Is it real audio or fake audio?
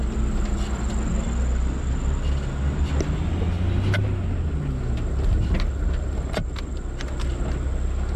real